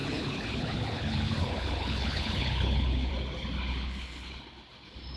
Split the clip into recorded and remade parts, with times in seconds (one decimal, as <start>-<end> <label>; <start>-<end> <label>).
0.0-3.1 remade; 3.1-3.7 recorded; 3.7-4.3 remade; 4.3-5.2 recorded

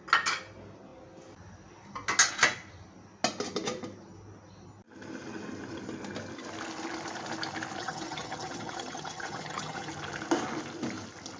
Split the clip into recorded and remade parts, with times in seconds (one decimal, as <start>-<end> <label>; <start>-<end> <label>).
0.0-7.8 recorded; 7.8-9.9 remade; 9.9-11.4 recorded